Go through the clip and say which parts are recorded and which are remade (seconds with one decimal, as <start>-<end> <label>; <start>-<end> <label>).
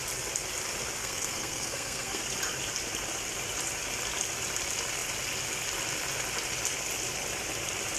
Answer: 0.0-1.0 recorded; 1.0-2.2 remade; 2.2-8.0 recorded